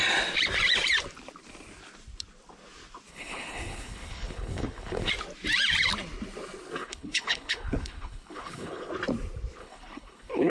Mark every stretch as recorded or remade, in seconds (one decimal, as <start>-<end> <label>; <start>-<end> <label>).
0.0-3.1 recorded; 3.1-5.1 remade; 5.1-6.8 recorded; 6.8-8.9 remade; 8.9-9.6 recorded; 9.6-10.5 remade